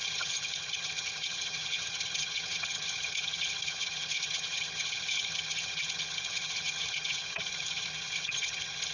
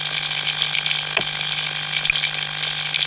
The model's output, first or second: first